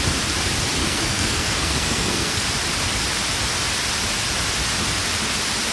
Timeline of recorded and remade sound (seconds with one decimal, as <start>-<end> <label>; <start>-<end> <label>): 0.0-0.8 recorded; 0.8-2.4 remade; 2.4-5.7 recorded